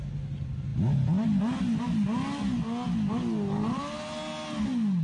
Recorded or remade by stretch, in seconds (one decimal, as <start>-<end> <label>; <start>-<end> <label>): 0.0-5.0 recorded